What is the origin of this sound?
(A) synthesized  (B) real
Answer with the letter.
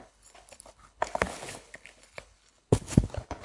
A